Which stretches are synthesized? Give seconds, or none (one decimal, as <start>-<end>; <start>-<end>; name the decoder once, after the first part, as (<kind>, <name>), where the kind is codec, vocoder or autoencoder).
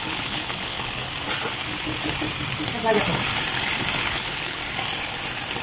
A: 0.0-1.0 (codec, HILCodec); 4.1-4.6